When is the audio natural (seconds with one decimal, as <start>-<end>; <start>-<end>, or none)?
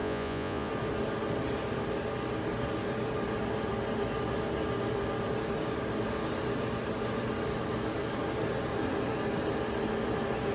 0.7-10.5